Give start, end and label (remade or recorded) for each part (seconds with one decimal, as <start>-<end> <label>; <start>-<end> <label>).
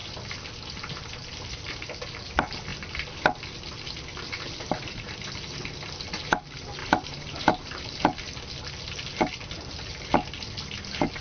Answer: 0.0-6.8 recorded; 6.8-8.0 remade; 8.0-11.2 recorded